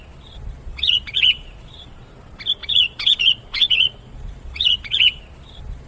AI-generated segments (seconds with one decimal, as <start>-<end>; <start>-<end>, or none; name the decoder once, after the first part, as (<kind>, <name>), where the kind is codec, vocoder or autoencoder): 0.7-2.1 (vocoder, Vocos); 2.6-5.2